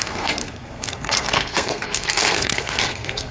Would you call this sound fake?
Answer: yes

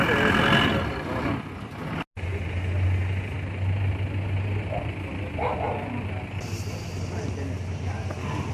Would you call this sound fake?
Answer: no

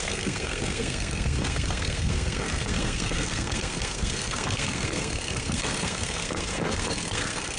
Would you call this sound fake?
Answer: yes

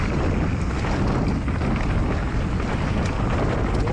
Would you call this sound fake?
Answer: no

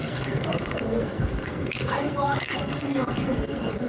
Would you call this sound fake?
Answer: yes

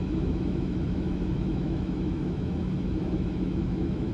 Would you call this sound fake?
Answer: yes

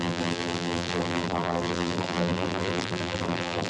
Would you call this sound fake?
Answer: yes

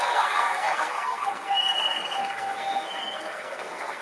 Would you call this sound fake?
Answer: yes